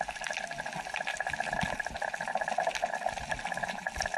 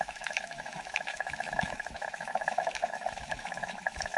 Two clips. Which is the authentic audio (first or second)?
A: first